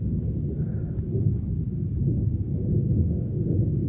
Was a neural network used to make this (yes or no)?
yes